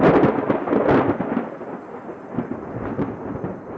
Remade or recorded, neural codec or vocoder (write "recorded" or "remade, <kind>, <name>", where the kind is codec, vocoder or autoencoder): recorded